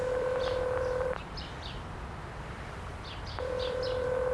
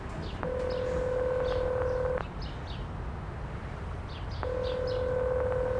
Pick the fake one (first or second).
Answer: first